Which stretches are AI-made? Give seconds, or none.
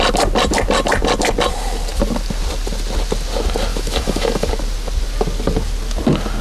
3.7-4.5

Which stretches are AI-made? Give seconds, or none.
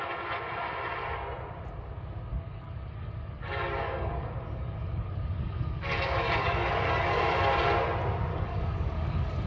2.3-7.2; 8.3-9.5